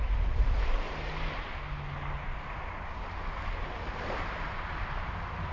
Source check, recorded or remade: recorded